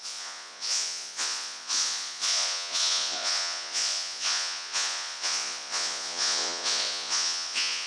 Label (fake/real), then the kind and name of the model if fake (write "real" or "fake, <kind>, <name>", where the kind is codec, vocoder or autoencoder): fake, vocoder, Vocos